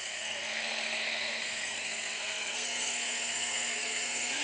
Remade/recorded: remade